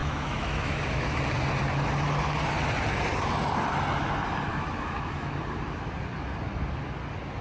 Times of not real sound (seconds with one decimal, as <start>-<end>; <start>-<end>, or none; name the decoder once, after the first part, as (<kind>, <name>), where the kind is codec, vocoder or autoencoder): 0.0-1.2 (autoencoder, DAC-VAE); 4.5-5.4